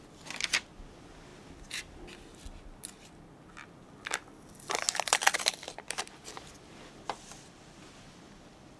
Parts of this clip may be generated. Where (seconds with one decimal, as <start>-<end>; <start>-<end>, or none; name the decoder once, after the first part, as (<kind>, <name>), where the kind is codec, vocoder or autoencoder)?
none